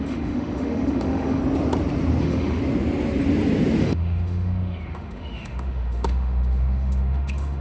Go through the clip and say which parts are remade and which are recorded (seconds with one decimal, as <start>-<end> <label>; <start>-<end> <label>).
0.0-1.4 remade; 1.4-2.2 recorded; 2.2-2.6 remade; 2.6-3.8 recorded; 3.8-7.6 remade